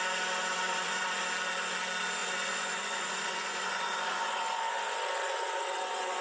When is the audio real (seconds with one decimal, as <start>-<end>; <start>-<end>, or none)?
0.0-0.5; 1.2-2.2